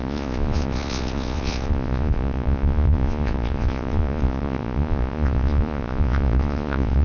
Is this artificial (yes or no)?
yes